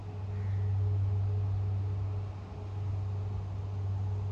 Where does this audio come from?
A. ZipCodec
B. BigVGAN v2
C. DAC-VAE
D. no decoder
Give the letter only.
D